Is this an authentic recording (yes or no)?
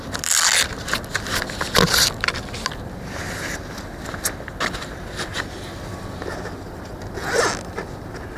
yes